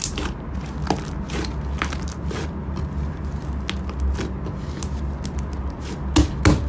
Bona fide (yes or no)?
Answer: yes